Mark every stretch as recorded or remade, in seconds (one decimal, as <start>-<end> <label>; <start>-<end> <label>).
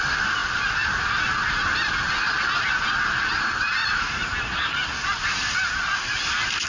0.0-3.8 recorded; 3.8-4.7 remade; 4.7-6.7 recorded